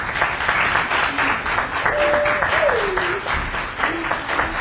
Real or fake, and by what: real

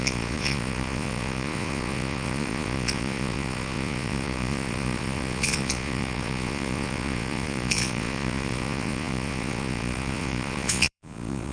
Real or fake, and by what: fake, vocoder, Vocos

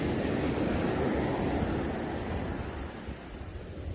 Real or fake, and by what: real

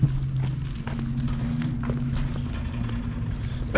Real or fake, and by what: real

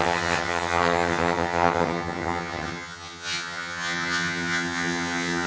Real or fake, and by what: fake, vocoder, HiFi-GAN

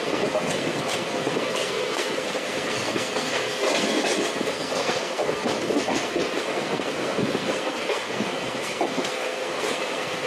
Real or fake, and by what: fake, codec, SNAC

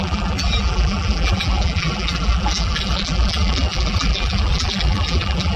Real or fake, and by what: fake, vocoder, BigVGAN v2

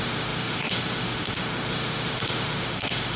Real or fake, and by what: fake, autoencoder, DAC-VAE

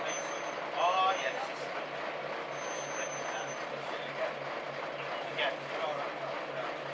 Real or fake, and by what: real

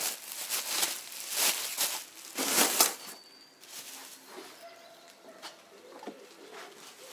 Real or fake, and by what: real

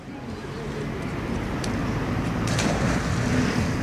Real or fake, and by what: real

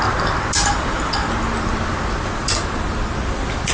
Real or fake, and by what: real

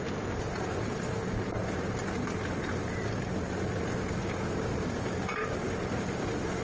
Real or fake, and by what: real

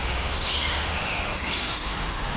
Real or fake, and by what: fake, autoencoder, DAC-VAE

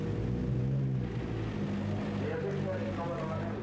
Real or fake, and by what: real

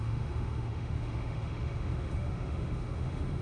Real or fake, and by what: fake, autoencoder, DAC-VAE